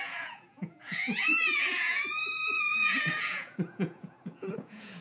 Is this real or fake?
fake